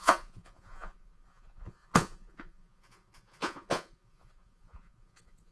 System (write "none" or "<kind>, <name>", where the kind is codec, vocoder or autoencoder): vocoder, Vocos